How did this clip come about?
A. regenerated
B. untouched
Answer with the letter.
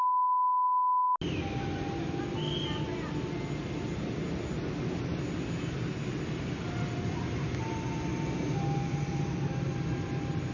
B